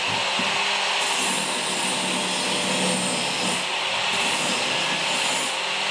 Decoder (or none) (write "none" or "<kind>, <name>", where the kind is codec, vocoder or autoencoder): none